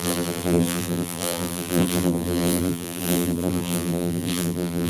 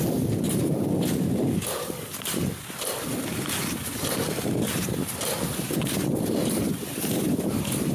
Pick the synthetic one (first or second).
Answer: first